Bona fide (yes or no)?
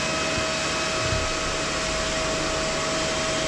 yes